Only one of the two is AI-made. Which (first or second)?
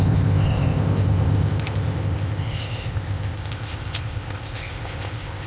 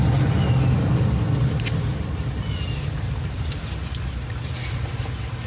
first